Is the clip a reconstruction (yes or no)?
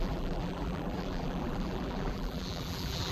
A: yes